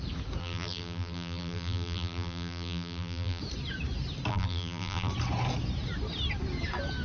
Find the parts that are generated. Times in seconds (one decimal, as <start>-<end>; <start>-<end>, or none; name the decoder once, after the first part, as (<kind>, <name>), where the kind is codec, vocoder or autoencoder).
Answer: 0.4-3.4 (vocoder, BigVGAN v2); 4.3-5.1